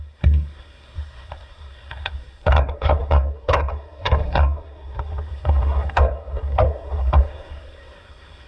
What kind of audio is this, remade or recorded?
remade